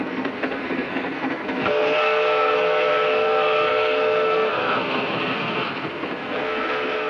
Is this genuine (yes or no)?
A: no